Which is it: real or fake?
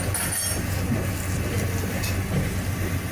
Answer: real